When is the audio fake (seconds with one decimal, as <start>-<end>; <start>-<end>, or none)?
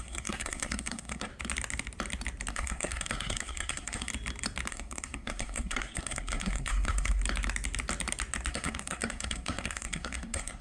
0.0-1.3; 2.5-4.1; 4.7-7.2; 8.5-10.6